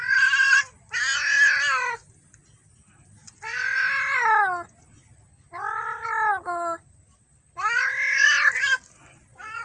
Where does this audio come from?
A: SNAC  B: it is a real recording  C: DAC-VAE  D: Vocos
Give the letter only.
B